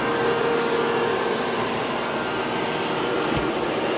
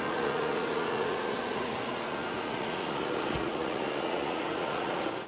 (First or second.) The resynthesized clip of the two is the second